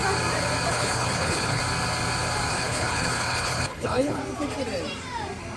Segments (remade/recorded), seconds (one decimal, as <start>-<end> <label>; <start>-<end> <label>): 0.0-0.7 recorded; 0.7-1.6 remade; 1.6-2.5 recorded; 2.5-4.2 remade; 4.2-5.6 recorded